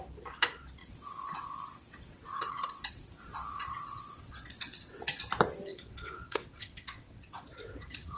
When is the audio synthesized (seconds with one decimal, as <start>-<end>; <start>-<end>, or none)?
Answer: 0.8-5.2; 5.7-8.2